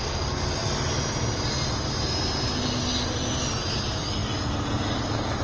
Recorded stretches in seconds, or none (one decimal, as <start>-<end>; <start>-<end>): 0.0-5.4